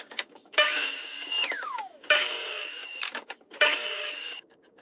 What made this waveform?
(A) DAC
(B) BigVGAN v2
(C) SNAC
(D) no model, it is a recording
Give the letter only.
A